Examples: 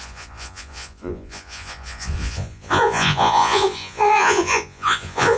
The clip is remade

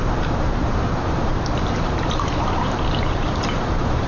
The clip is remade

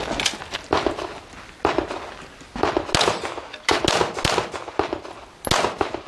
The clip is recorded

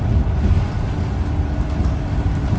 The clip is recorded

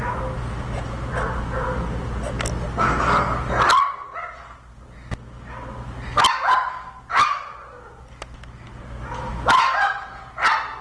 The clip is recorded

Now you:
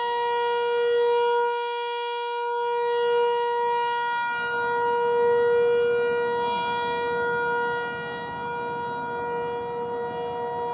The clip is recorded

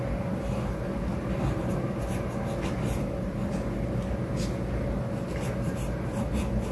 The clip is recorded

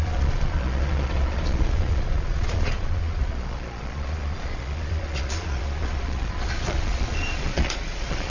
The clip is remade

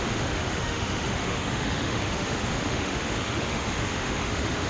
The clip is remade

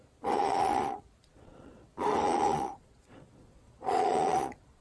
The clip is remade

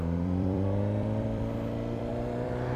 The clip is remade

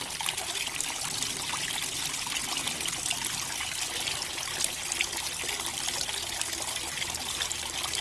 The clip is recorded